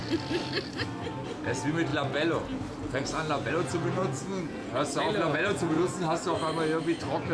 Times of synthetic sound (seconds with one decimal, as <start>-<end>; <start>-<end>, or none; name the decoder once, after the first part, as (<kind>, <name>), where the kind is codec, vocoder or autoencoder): 4.0-5.9 (vocoder, Vocos)